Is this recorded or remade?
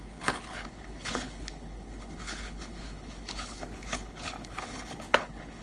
remade